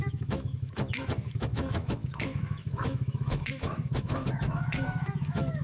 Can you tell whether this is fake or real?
fake